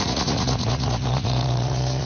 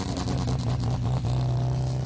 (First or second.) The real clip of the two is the second